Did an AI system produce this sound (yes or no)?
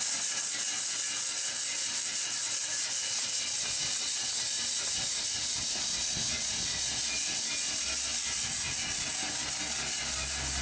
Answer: no